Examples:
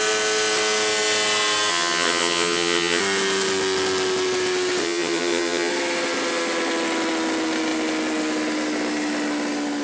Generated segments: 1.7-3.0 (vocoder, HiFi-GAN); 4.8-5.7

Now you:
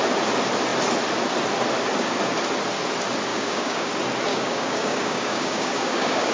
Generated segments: 3.3-3.9 (codec, DAC); 4.3-6.3

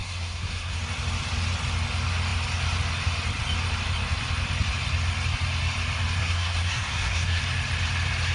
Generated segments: 0.0-0.8 (codec, SNAC); 6.2-7.4

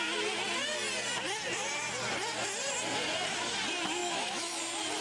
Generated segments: 4.0-4.6 (autoencoder, DAC-VAE)

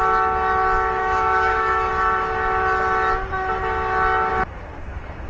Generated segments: 1.0-1.9 (autoencoder, DAC-VAE); 4.3-5.3

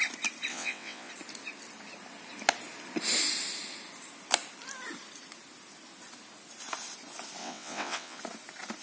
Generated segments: 0.5-1.1 (vocoder, WaveNeXt); 7.4-8.2

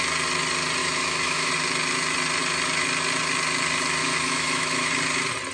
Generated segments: 0.8-1.5 (autoencoder, DAC-VAE); 4.0-4.9

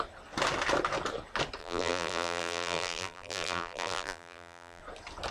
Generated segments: 1.6-4.8 (vocoder, BigVGAN v2)